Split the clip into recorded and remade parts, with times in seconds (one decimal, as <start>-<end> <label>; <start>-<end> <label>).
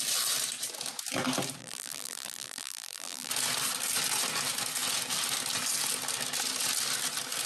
0.0-1.6 recorded; 1.6-3.3 remade; 3.3-7.5 recorded